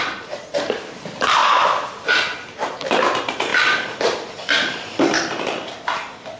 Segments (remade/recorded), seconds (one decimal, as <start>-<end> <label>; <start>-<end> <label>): 0.0-6.4 remade